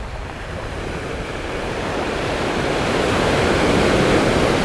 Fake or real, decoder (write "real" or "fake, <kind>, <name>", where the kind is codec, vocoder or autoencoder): fake, vocoder, BigVGAN v2